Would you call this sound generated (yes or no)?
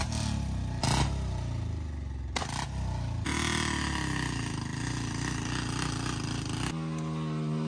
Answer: no